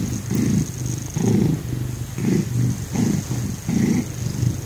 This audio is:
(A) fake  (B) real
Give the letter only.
B